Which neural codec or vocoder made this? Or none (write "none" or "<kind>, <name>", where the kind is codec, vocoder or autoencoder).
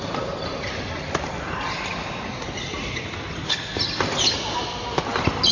none